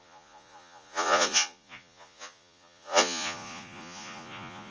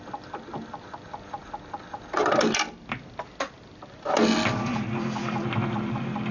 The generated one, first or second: first